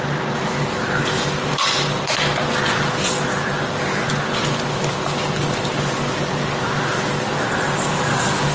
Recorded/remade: recorded